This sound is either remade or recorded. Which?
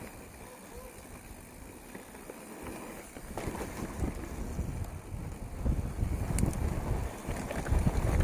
recorded